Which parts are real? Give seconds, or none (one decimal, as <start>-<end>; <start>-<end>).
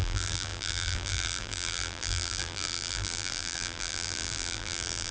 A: none